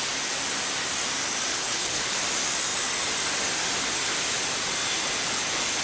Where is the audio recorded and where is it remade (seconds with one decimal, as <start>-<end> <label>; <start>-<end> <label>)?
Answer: 0.0-1.5 recorded; 1.5-2.2 remade; 2.2-5.8 recorded